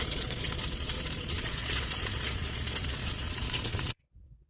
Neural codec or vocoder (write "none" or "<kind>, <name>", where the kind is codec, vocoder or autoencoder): vocoder, Vocos